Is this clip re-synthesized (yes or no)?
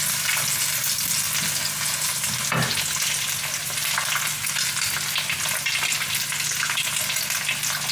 no